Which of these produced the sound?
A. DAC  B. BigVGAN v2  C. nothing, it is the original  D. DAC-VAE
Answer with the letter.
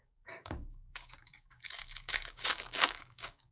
A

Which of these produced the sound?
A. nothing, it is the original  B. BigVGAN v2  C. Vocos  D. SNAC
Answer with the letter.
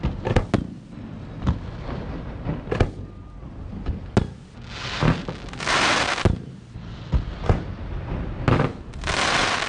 A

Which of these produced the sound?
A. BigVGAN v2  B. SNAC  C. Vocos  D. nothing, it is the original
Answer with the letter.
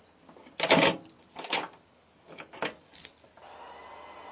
D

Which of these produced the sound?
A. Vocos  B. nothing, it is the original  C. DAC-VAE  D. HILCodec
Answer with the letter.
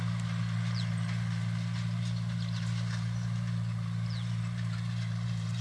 B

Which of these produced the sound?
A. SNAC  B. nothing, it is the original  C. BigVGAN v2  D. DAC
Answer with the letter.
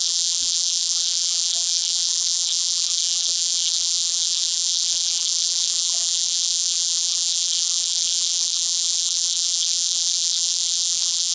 C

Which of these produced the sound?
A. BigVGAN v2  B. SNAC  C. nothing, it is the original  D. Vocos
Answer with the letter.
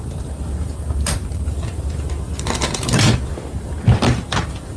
A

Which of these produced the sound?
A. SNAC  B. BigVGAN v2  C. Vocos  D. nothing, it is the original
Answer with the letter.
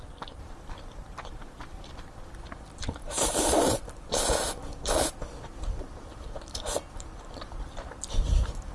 B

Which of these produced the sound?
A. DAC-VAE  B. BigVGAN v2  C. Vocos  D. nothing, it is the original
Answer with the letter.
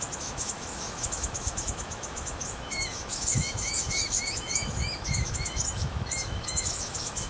A